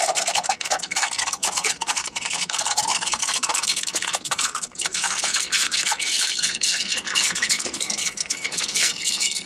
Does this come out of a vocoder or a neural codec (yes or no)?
yes